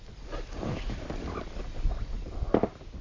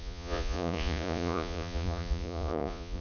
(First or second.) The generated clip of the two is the second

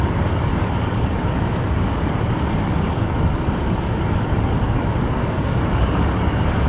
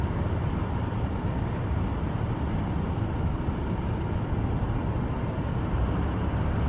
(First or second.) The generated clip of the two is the first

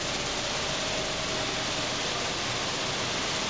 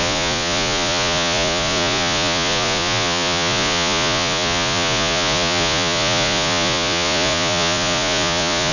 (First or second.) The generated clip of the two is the second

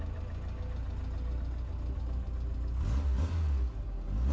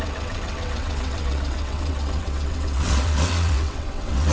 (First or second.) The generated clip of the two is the second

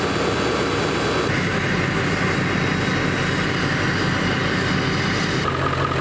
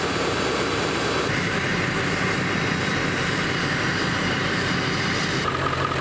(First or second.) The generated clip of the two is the second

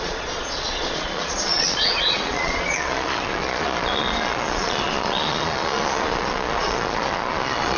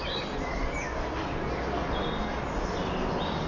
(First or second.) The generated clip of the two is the first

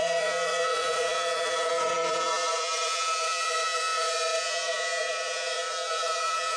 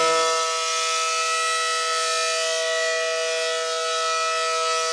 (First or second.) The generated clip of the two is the first